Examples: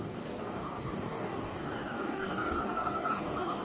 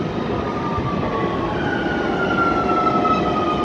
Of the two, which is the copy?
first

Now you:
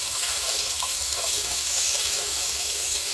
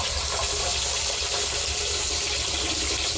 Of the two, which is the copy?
first